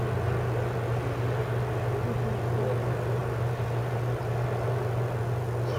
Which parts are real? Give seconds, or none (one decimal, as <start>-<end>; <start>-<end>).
0.0-5.8